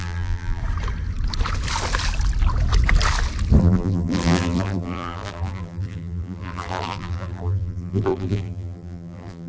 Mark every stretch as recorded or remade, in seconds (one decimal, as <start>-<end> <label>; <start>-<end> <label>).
0.0-0.6 remade; 0.6-3.6 recorded; 3.6-9.5 remade